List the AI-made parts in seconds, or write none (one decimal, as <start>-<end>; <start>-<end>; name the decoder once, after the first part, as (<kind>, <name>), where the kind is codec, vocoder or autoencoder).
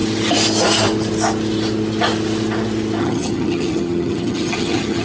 3.0-5.0 (vocoder, HiFi-GAN)